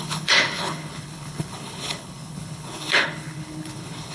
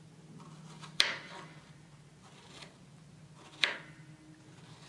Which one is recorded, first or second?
second